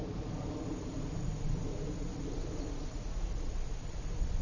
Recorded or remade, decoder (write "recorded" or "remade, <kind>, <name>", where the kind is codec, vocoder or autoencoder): recorded